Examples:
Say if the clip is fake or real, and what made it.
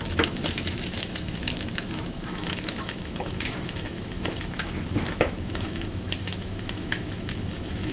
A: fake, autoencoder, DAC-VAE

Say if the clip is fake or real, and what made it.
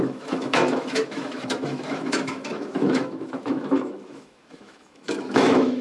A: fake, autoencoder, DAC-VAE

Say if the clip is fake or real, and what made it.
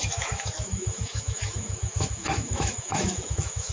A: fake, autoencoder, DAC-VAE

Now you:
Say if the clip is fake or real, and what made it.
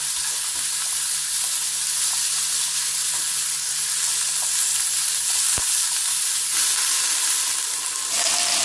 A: real